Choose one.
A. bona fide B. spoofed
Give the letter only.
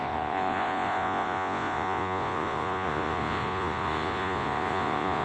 B